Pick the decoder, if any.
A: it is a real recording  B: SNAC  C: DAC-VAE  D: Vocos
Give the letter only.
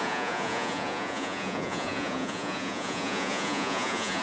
D